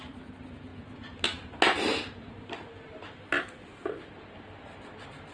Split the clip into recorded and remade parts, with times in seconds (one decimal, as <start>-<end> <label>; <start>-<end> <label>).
0.0-5.3 recorded